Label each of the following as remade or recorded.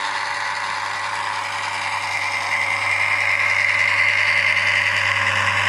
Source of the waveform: recorded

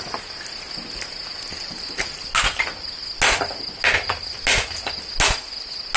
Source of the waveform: recorded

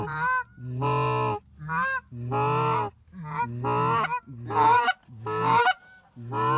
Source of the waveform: recorded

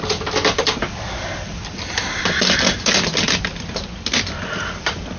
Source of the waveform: recorded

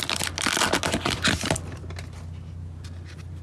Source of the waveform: recorded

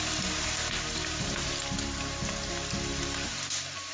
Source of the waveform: remade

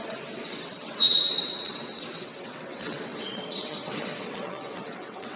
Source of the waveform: remade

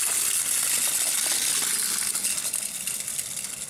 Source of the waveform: recorded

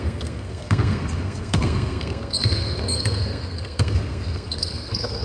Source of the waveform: remade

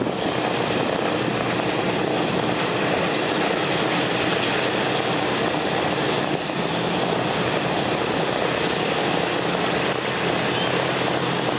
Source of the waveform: recorded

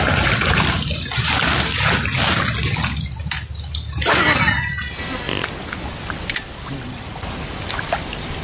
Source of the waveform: recorded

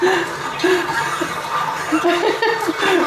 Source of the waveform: recorded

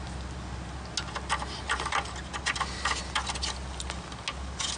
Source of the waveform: recorded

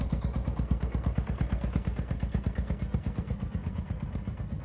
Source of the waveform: remade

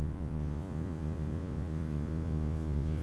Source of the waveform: remade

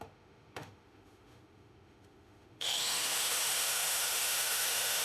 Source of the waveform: remade